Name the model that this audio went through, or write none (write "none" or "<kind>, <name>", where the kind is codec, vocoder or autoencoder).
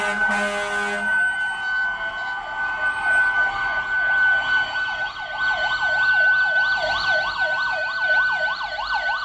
none